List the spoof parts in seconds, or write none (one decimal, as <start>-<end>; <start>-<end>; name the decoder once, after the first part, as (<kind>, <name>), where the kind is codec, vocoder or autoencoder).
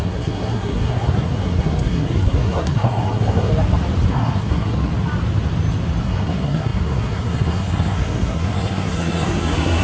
0.0-3.5 (codec, SNAC); 4.1-4.9; 6.0-9.8